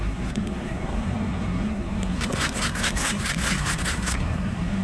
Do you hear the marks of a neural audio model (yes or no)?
yes